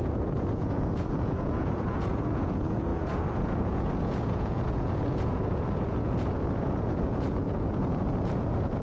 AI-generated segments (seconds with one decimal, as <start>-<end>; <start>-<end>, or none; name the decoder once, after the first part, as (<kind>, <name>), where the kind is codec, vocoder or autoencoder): 0.0-8.8 (vocoder, Vocos)